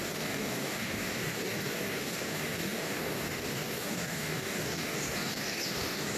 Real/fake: fake